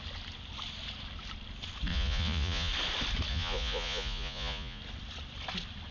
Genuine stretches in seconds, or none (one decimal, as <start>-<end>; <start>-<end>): 0.0-1.9; 2.7-3.3; 4.8-5.9